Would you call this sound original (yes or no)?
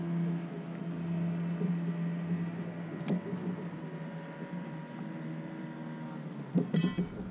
yes